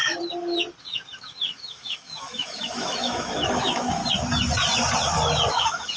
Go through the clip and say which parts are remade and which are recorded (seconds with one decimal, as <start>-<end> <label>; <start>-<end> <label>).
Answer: 0.0-0.8 recorded; 0.8-4.0 remade; 4.0-5.5 recorded; 5.5-6.0 remade